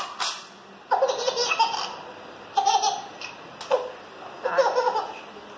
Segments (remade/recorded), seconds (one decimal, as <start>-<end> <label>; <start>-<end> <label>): 0.0-5.6 recorded